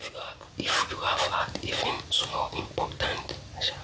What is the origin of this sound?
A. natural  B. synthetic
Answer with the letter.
A